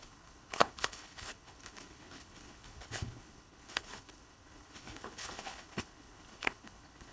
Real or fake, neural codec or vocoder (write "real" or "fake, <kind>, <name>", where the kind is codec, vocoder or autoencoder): fake, codec, HILCodec